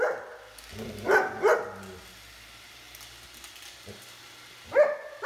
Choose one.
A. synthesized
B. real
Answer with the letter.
B